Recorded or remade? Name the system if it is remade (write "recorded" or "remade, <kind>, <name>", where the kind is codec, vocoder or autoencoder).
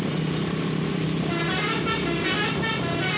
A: recorded